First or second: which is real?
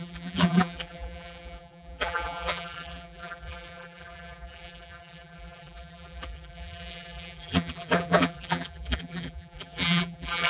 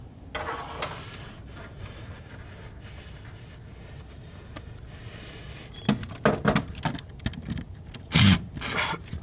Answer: second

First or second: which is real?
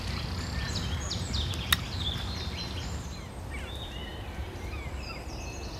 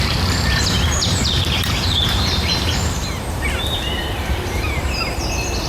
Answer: first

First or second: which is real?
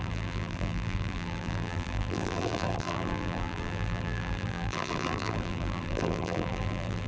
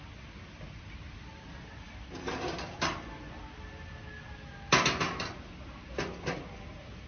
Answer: second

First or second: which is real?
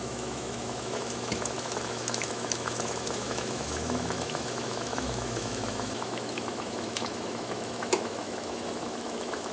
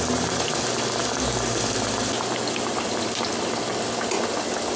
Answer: second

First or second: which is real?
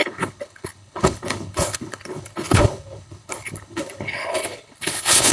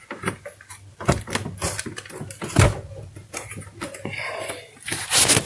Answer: second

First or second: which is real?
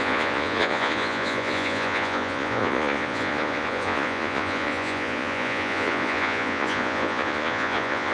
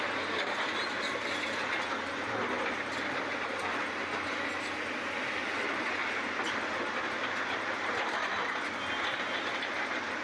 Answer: second